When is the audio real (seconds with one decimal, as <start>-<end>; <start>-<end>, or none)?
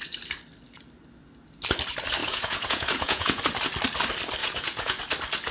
0.0-2.2; 3.4-4.4; 5.0-5.5